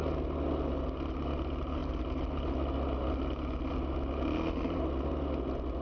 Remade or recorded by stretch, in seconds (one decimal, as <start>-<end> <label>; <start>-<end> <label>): 0.0-5.8 recorded